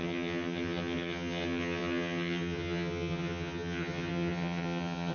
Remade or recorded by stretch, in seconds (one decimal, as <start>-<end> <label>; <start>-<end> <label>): 0.0-5.1 remade